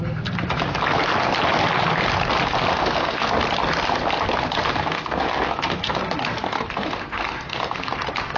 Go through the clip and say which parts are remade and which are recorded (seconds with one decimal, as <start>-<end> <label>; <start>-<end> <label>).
0.0-2.7 recorded; 2.7-3.3 remade; 3.3-4.7 recorded; 4.7-6.0 remade; 6.0-6.4 recorded; 6.4-8.0 remade; 8.0-8.4 recorded